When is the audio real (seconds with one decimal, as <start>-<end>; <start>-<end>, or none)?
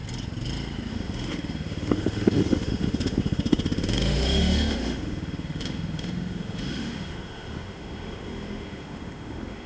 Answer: 0.0-0.9